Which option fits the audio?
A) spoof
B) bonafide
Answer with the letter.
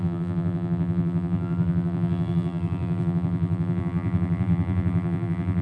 A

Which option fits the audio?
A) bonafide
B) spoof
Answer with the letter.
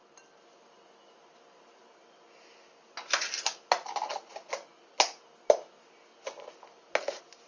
A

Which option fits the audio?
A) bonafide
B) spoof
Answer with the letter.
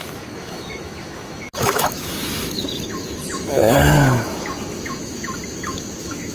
B